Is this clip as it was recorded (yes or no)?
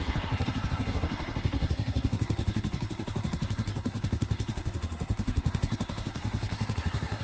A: no